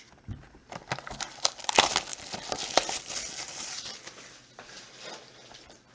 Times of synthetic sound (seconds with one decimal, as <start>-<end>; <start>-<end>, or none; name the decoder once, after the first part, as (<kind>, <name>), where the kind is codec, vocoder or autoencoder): 0.0-5.9 (vocoder, BigVGAN v2)